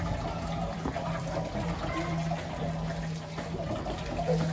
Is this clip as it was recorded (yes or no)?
yes